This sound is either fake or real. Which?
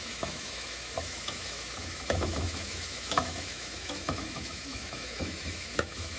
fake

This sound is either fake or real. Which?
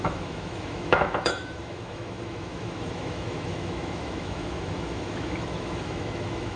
fake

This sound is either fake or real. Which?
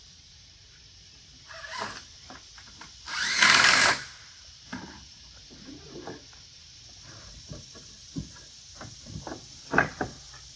fake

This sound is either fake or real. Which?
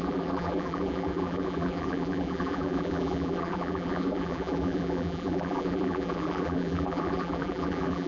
fake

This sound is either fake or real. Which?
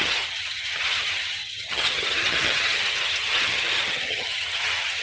fake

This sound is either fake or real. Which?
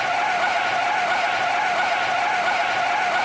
real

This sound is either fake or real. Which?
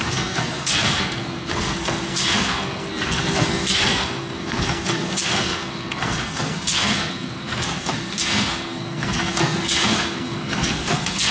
fake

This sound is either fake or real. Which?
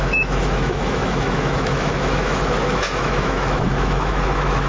fake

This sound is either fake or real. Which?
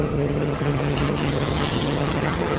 fake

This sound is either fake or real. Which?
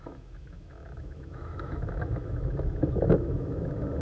fake